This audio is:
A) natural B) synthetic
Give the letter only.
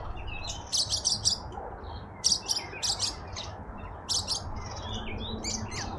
A